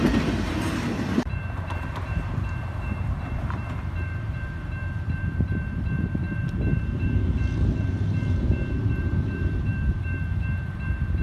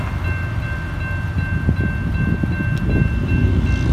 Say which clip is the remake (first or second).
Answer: first